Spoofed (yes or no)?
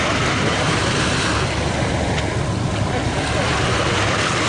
no